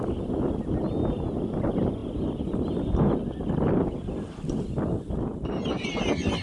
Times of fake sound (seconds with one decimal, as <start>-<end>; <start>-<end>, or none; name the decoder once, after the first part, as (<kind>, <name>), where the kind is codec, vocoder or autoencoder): none